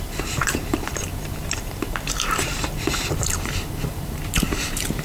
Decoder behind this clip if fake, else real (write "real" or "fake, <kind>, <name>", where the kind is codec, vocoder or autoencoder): fake, vocoder, BigVGAN v2